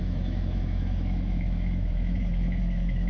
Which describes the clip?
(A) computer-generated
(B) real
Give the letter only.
A